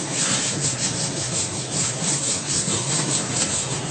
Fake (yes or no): yes